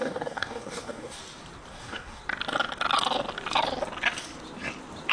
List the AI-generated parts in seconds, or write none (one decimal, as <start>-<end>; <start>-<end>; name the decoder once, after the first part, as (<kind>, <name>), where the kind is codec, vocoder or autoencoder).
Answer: 0.0-1.2 (codec, DAC); 1.7-2.2